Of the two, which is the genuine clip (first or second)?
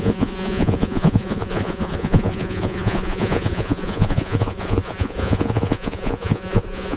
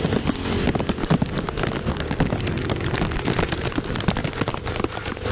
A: second